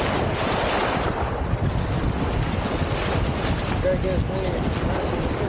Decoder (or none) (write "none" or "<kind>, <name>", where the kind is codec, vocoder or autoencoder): none